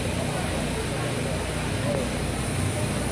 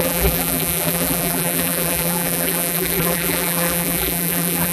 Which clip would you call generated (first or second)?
second